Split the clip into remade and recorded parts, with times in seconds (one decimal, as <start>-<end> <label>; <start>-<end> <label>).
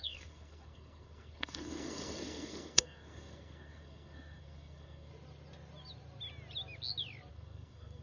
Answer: 0.0-5.1 remade; 5.1-7.3 recorded; 7.3-8.0 remade